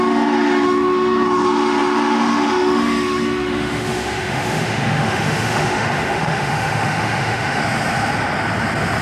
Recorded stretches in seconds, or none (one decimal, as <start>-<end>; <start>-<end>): 7.6-9.0